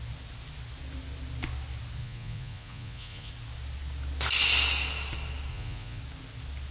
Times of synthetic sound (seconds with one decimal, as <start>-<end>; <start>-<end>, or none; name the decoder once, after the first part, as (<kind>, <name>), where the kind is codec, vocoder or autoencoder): 2.0-3.3 (vocoder, Vocos); 5.5-6.0